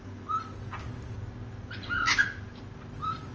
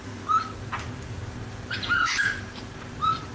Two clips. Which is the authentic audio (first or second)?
first